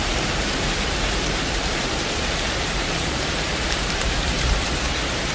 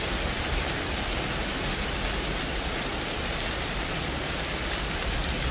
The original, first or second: second